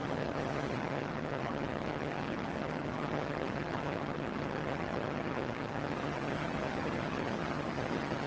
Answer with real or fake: fake